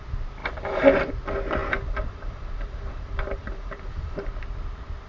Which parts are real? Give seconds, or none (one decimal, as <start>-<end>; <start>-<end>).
0.0-0.4; 1.1-1.6; 4.3-5.1